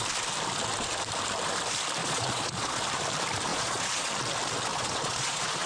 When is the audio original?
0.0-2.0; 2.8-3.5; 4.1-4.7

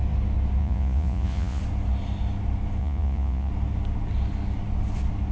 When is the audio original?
0.0-0.6; 1.6-2.8; 3.5-5.3

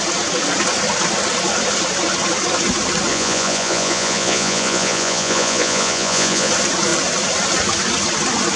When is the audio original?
0.0-3.1; 6.5-8.6

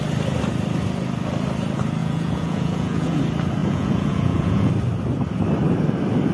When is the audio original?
0.0-2.0; 3.2-3.6; 4.7-6.3

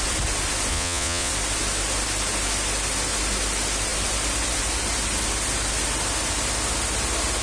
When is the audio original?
0.0-0.7; 1.3-7.4

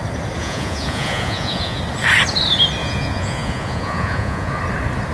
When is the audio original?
0.0-0.4; 1.8-2.8; 4.6-5.1